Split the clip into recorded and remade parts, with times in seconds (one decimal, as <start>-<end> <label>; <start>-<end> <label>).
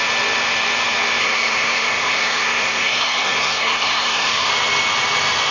0.0-1.2 recorded; 1.2-4.5 remade; 4.5-5.5 recorded